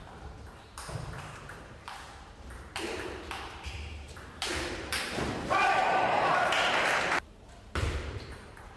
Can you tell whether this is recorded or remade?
remade